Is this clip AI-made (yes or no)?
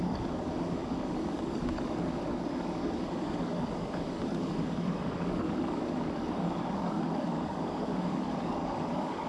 yes